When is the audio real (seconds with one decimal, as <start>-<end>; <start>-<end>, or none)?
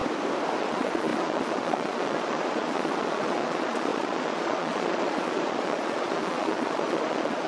0.0-0.6